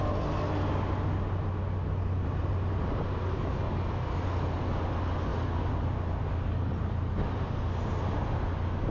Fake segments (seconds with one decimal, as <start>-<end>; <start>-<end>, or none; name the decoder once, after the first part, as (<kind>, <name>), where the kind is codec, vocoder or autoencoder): none